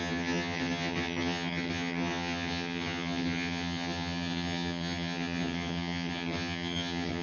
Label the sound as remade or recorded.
remade